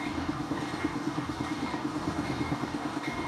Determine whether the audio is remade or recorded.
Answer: remade